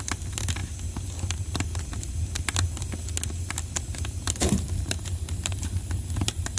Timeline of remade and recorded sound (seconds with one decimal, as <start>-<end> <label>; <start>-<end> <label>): 0.0-0.6 remade; 0.6-4.1 recorded; 4.1-6.6 remade